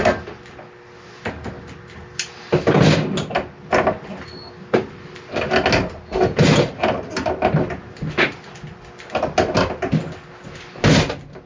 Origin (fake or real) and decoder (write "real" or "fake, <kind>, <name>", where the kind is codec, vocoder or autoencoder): real